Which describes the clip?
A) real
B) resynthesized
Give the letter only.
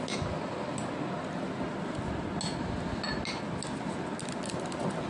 A